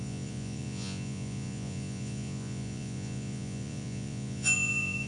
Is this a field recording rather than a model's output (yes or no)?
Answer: no